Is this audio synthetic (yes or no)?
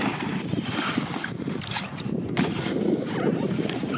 no